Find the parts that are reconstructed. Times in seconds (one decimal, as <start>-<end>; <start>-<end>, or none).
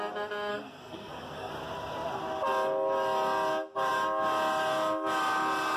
0.5-1.5